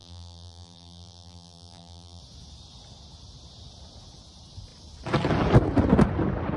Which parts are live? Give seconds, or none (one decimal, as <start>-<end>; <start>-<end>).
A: 2.2-6.6